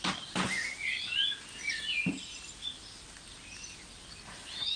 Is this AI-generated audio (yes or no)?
no